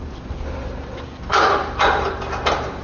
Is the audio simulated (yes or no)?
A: yes